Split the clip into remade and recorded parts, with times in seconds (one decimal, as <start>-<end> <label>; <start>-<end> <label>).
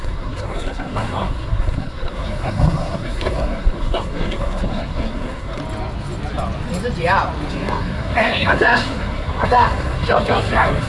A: 0.0-5.6 remade; 5.6-7.5 recorded; 7.5-10.9 remade